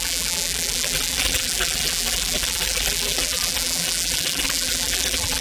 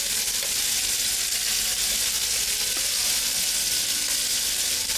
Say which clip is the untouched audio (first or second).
second